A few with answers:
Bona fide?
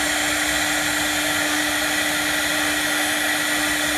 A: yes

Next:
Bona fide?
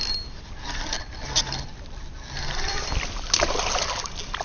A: yes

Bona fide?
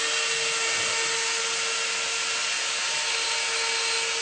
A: yes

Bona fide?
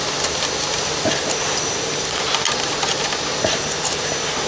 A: yes